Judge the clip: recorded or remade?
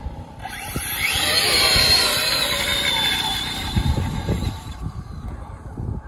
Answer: remade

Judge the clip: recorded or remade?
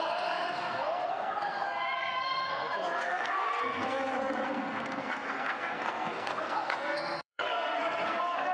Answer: remade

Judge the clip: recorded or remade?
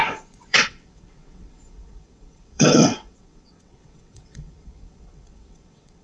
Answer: remade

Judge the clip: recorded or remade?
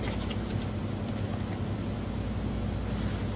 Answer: recorded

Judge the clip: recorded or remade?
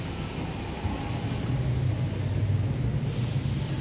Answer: recorded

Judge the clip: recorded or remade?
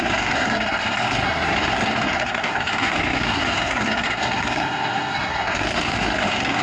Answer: remade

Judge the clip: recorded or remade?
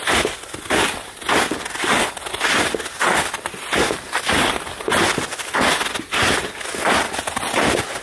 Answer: recorded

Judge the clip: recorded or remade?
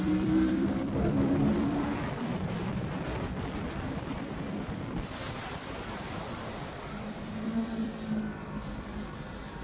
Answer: remade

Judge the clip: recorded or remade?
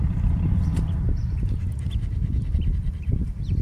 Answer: remade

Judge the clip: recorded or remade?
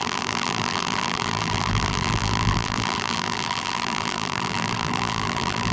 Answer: remade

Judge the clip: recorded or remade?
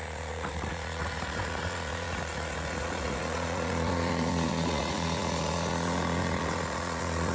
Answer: remade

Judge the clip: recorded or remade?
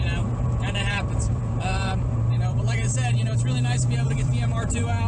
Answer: remade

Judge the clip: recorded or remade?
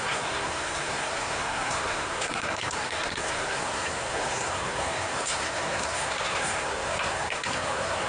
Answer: remade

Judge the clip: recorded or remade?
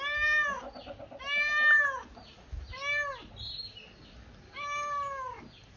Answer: recorded